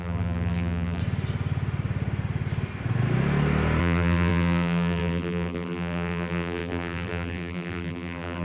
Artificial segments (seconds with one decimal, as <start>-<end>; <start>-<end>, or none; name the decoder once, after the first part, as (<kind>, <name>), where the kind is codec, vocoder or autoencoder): 0.0-1.0 (vocoder, BigVGAN v2); 3.8-8.4